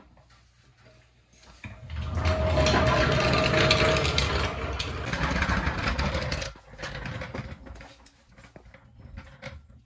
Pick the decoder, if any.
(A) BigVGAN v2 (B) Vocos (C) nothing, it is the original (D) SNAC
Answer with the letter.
C